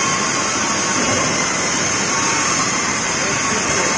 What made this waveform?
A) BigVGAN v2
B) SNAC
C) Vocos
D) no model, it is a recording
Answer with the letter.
A